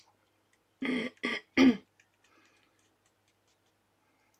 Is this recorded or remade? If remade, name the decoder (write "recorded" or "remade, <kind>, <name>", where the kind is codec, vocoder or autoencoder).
recorded